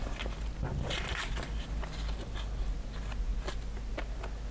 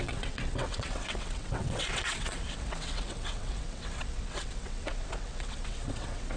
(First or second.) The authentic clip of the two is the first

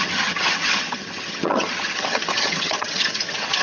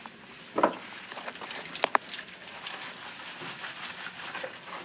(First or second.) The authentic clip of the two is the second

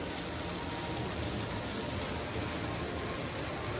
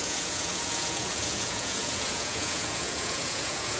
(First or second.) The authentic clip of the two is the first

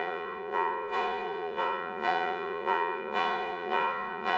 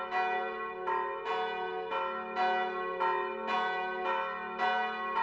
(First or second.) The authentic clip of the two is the second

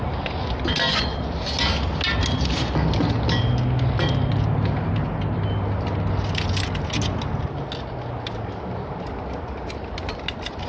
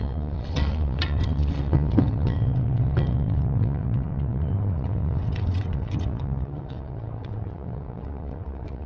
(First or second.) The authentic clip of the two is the first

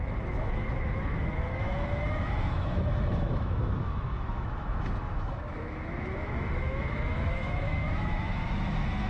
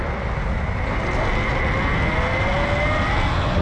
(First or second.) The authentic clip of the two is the second